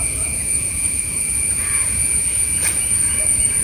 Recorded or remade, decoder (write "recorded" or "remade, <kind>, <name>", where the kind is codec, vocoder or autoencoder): remade, vocoder, Vocos